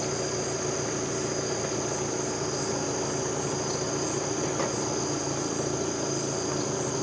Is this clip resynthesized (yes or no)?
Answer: no